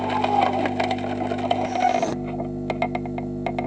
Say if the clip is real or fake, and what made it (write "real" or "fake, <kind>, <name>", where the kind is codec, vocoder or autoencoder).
real